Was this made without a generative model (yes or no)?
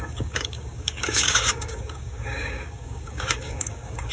no